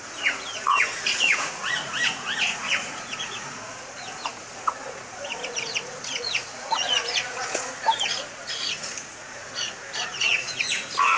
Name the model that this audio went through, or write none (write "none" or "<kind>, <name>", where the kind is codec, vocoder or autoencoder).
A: vocoder, Vocos